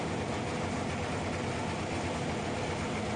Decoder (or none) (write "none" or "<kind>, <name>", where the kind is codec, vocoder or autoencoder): none